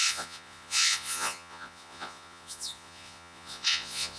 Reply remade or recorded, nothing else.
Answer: remade